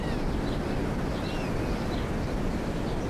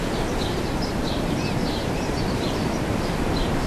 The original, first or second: first